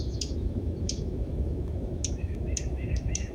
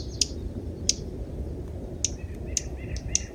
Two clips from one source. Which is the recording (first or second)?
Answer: second